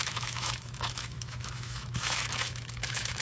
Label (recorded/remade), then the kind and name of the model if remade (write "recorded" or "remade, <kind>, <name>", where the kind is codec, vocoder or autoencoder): remade, autoencoder, DAC-VAE